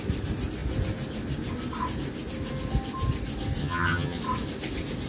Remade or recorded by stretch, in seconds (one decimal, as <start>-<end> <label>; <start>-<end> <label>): 0.0-3.6 recorded; 3.6-4.2 remade; 4.2-5.1 recorded

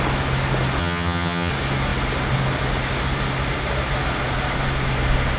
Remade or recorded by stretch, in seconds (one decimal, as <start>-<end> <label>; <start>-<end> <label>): 0.0-0.8 recorded; 0.8-1.5 remade; 1.5-5.4 recorded